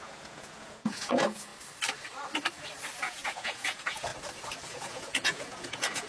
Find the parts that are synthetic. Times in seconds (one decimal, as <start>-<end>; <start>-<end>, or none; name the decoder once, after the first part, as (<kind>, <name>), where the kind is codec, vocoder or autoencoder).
0.0-1.5 (vocoder, Vocos); 3.0-4.1; 4.7-6.1